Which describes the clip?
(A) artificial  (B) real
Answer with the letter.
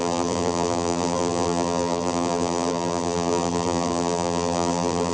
A